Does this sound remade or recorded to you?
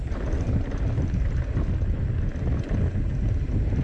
recorded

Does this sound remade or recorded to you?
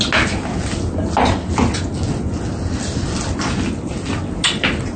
recorded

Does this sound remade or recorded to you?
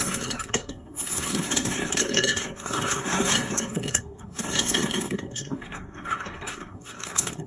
remade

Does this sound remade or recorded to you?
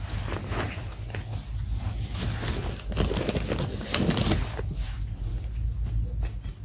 recorded